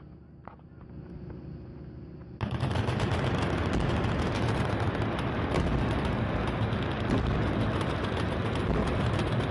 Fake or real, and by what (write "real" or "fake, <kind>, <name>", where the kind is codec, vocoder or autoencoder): real